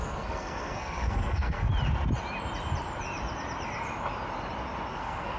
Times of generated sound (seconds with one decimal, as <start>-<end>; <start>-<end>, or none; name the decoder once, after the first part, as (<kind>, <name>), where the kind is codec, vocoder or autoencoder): 0.0-1.7 (codec, SNAC); 4.9-5.4